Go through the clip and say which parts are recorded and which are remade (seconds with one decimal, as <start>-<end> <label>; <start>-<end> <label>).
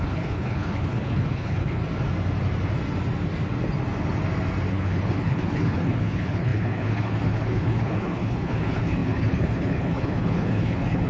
0.0-1.8 remade; 1.8-4.7 recorded; 4.7-11.1 remade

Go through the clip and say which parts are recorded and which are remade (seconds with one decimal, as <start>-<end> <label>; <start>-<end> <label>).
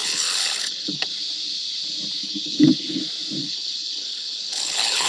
0.0-1.1 remade; 1.1-2.2 recorded; 2.2-3.0 remade; 3.0-3.4 recorded; 3.4-5.1 remade